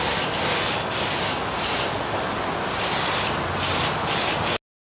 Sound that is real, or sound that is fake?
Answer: real